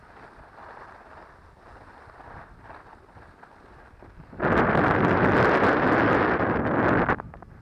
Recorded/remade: recorded